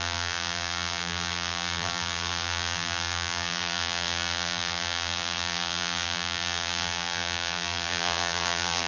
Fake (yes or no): yes